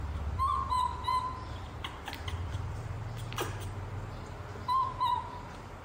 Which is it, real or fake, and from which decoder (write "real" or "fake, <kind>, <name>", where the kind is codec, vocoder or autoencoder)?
real